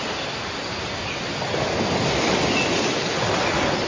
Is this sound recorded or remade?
recorded